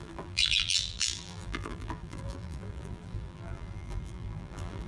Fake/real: fake